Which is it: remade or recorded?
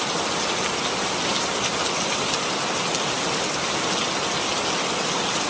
recorded